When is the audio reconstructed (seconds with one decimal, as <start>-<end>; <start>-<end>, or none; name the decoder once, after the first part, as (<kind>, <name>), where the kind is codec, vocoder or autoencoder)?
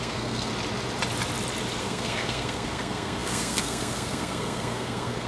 0.0-0.5 (codec, SNAC); 1.8-5.3